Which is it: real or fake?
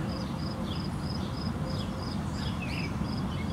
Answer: fake